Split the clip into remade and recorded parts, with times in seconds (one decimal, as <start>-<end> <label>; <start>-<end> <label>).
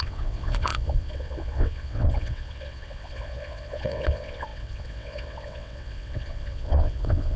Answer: 0.0-7.4 remade